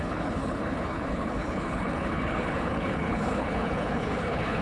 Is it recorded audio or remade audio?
remade